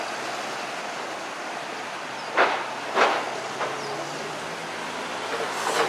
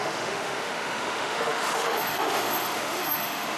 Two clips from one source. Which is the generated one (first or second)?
second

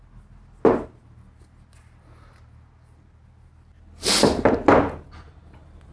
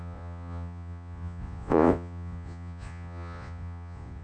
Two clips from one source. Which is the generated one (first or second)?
second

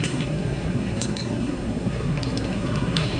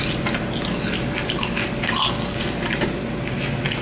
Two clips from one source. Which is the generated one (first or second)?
first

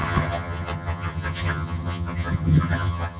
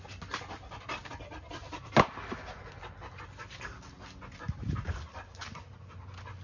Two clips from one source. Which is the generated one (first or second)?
first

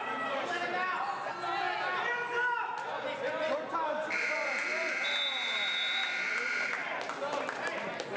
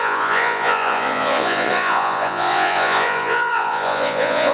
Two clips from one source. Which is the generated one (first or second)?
second